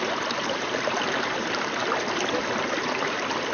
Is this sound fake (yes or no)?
yes